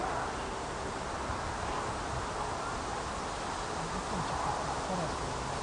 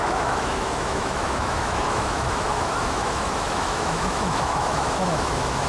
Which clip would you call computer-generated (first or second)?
second